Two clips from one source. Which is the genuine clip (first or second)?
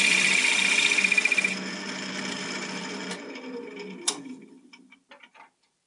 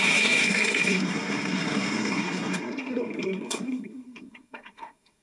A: first